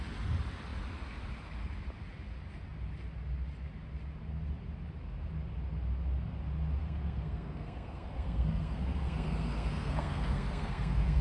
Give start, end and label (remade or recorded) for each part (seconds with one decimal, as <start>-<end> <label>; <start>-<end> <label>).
0.0-6.8 recorded; 6.8-11.2 remade